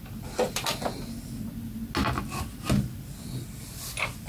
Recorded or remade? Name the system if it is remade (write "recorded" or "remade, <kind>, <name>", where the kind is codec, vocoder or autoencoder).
recorded